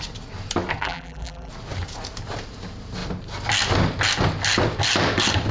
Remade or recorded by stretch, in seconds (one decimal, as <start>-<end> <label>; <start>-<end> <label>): 0.0-0.8 recorded; 0.8-1.5 remade; 1.5-5.5 recorded